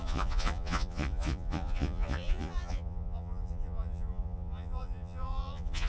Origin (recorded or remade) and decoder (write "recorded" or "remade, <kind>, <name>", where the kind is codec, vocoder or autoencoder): remade, vocoder, Vocos